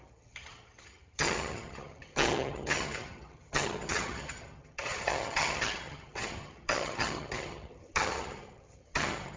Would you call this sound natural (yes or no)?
no